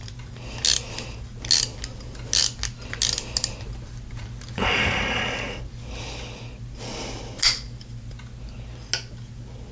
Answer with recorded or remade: recorded